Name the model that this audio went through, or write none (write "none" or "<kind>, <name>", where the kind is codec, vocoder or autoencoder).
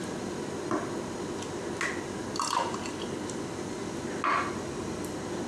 none